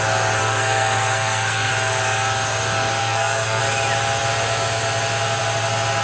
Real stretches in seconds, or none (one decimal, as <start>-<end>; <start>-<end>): 0.0-0.4; 1.7-3.0; 3.6-6.0